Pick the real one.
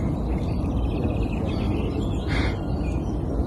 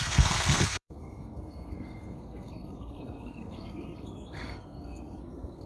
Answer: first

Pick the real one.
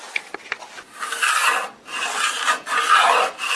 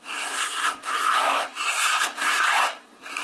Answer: first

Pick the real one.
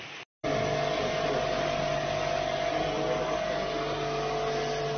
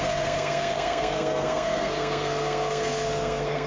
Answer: first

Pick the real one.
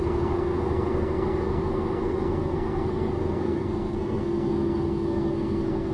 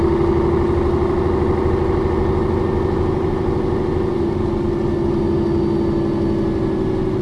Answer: second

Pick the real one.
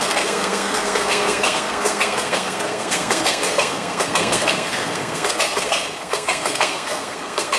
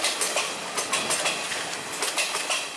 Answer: second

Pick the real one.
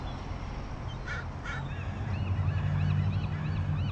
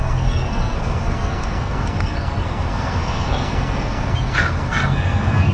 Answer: first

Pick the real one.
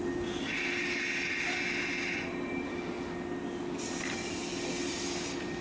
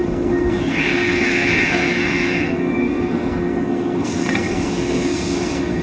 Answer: first